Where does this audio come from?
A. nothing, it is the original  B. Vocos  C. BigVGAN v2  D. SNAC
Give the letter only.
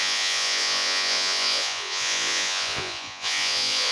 B